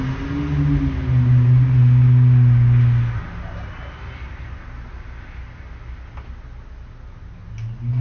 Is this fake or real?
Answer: real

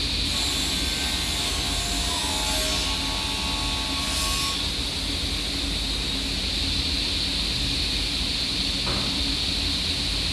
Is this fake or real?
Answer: real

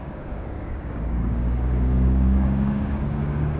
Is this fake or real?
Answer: fake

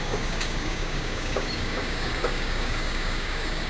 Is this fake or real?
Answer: fake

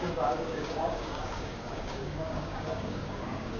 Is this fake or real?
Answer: fake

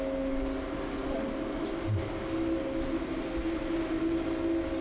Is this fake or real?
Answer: real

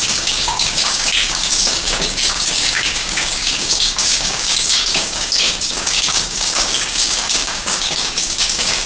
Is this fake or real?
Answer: fake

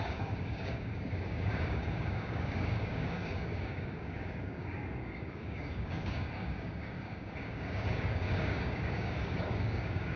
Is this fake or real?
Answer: fake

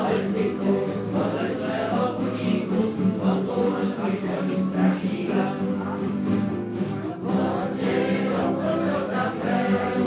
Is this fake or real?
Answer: fake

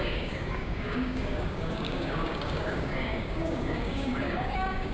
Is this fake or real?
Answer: fake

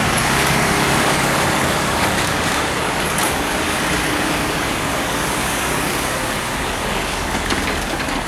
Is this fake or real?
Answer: fake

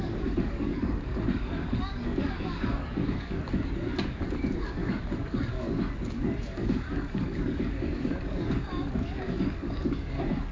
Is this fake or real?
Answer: fake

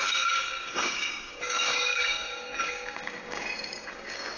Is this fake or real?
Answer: fake